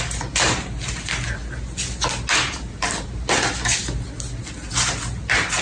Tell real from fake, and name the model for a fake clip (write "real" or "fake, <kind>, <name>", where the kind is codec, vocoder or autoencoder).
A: real